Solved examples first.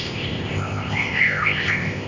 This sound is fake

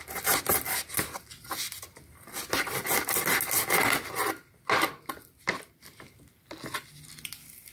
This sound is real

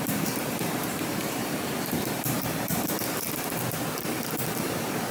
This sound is fake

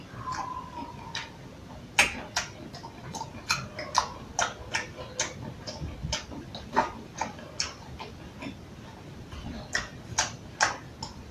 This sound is real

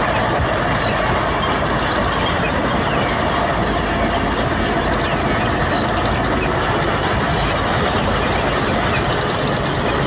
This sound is real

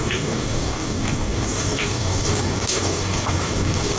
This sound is fake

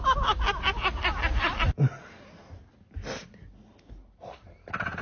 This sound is real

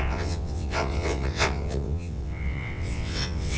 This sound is fake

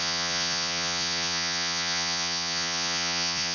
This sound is fake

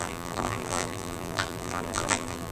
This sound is fake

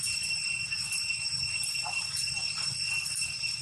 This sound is real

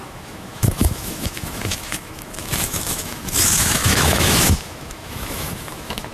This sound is fake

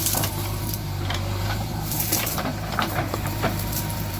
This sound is fake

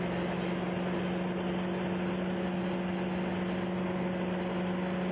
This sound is real